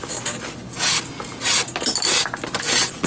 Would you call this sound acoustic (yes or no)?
yes